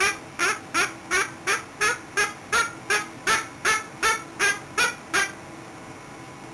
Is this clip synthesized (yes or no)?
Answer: no